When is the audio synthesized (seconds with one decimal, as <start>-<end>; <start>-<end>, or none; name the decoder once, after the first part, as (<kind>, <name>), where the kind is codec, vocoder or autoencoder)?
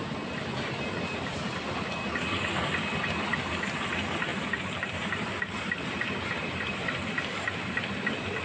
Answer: none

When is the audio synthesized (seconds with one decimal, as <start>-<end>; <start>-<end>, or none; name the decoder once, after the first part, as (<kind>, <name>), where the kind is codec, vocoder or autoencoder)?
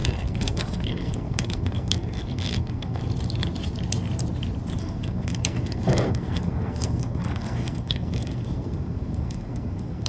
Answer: 0.0-3.0 (codec, SNAC); 4.8-10.1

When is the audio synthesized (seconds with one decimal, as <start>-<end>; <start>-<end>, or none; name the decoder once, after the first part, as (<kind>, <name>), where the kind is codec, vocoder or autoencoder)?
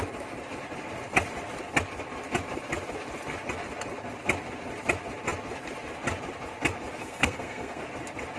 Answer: 7.0-7.8 (codec, SNAC)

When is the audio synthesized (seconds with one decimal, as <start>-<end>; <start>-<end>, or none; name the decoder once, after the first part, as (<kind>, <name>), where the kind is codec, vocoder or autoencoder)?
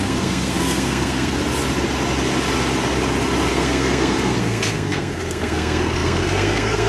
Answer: 0.0-1.4 (codec, SNAC); 3.5-6.9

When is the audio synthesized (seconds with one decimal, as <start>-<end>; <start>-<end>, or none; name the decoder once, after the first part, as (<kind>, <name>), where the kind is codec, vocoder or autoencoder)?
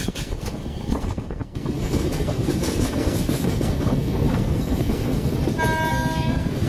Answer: 0.0-5.3 (codec, SNAC); 5.9-6.7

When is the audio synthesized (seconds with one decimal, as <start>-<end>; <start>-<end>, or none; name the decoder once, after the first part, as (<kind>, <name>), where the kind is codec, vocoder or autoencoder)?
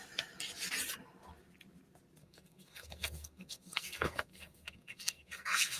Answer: 2.2-5.8 (codec, SNAC)